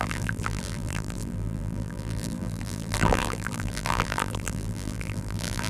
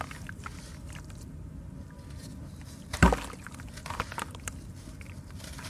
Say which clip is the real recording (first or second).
second